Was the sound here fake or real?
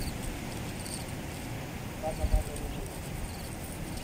real